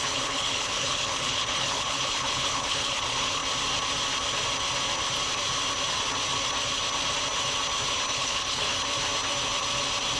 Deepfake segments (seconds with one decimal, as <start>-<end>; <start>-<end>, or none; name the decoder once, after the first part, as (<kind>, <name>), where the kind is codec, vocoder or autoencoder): 0.0-3.4 (codec, HILCodec); 8.1-8.7